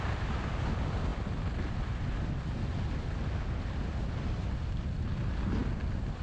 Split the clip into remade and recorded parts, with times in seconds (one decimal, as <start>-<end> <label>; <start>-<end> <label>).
0.0-6.2 recorded